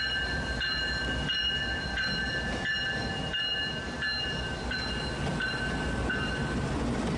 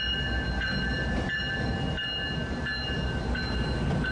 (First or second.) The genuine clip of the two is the second